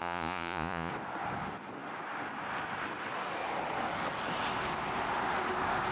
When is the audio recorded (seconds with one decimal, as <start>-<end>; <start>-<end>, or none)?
0.9-5.9